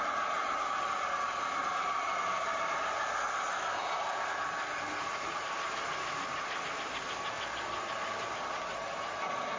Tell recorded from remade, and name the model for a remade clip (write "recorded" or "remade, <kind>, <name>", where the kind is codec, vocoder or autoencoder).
recorded